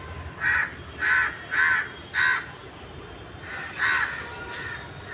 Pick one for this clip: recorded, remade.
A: recorded